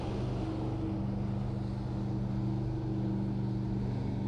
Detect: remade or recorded recorded